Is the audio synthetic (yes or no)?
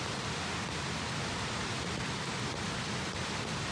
no